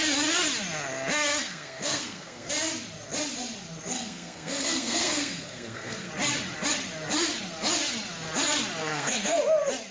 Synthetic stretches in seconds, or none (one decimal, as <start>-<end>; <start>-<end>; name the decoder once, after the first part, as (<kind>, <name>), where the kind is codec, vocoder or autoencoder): 1.3-2.5 (codec, SNAC); 3.9-6.1; 8.8-9.4